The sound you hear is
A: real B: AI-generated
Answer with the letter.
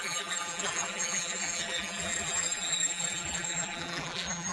B